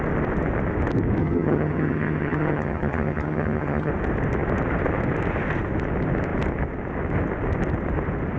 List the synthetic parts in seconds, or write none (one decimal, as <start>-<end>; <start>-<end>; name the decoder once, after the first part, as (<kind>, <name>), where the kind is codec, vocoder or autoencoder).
1.2-3.9 (vocoder, HiFi-GAN)